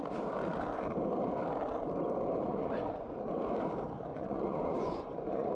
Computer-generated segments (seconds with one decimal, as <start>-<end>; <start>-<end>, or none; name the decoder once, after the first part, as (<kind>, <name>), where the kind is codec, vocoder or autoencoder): 2.5-3.3 (vocoder, Vocos); 4.1-5.5